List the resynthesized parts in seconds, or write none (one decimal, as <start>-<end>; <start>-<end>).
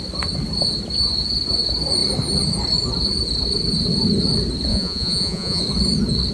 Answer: 4.7-5.6